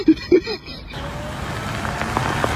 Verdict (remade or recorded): recorded